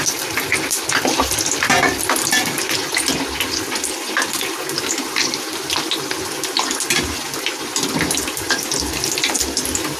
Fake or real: real